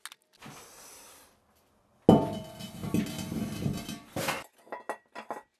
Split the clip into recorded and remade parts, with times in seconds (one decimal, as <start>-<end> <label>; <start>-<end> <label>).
0.0-5.6 recorded